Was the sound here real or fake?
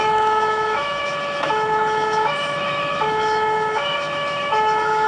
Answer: fake